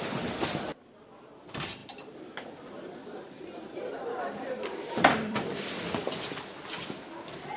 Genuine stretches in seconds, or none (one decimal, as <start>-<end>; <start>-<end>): 0.0-1.8; 6.1-7.6